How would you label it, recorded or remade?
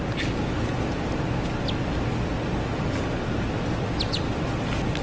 recorded